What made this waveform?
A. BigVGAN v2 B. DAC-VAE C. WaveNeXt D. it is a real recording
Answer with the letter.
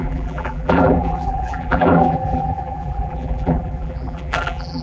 A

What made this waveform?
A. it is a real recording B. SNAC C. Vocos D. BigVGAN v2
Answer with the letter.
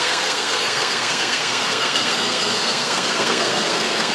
B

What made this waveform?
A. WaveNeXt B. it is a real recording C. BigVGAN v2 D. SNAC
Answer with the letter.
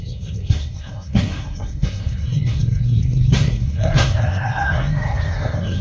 D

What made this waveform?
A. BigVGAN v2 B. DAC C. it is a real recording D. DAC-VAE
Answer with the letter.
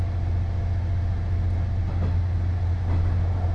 C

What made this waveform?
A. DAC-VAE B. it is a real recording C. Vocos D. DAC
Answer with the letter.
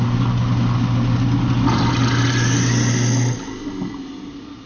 B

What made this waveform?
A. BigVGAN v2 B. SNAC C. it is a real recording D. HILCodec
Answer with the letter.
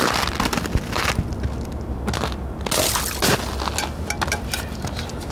C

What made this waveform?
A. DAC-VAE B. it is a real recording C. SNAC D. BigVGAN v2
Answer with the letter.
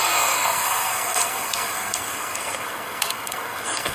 C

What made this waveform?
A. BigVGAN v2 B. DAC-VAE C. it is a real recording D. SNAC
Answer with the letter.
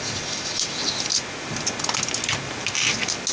C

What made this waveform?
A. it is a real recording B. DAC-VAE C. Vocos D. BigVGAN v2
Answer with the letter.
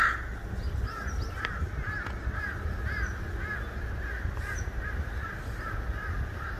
A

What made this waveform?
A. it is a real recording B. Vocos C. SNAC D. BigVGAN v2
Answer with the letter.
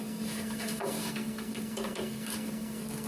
C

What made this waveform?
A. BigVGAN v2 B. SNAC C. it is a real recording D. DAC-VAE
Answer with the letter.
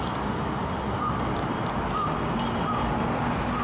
C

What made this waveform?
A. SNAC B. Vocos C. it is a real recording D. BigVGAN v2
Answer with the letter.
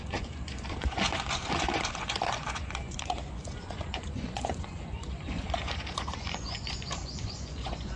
B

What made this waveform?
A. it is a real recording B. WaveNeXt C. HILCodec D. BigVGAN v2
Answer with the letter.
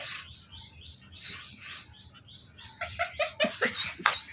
A